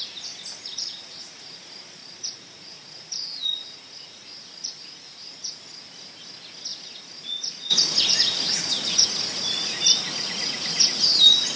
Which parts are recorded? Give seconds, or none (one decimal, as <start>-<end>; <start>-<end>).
0.0-0.6; 1.6-2.0; 5.6-6.7; 11.2-11.6